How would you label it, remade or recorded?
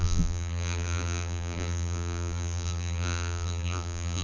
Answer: remade